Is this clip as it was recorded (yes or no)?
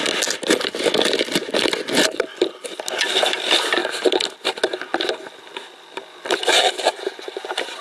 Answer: yes